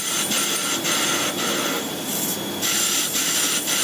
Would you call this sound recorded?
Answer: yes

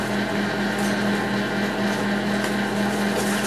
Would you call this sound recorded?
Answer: yes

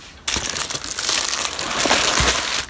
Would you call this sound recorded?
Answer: yes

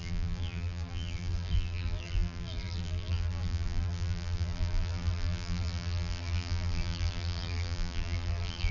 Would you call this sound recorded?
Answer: no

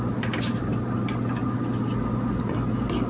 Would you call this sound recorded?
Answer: yes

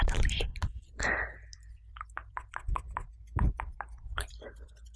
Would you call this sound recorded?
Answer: no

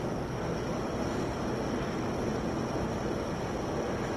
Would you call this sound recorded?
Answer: yes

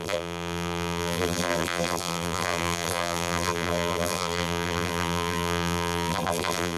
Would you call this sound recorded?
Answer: no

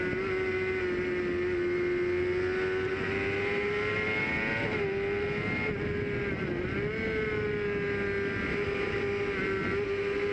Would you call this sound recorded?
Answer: yes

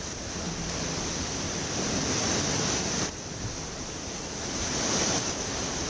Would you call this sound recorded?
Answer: yes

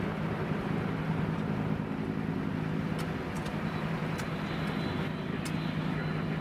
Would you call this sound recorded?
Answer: yes